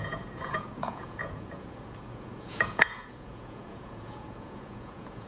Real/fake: fake